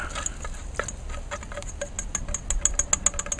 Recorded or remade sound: recorded